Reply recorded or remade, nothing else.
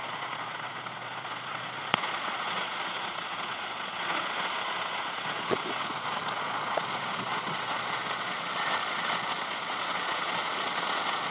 remade